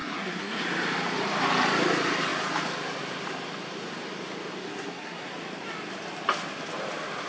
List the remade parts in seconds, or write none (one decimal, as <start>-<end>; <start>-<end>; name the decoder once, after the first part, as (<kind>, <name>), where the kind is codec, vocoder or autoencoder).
0.0-0.6 (codec, SNAC); 4.6-5.3